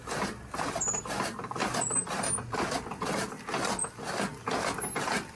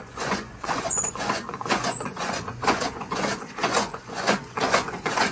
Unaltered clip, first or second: first